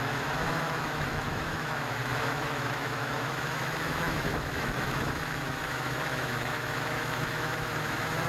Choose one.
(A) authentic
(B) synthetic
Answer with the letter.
B